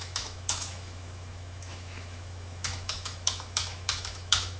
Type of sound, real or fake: fake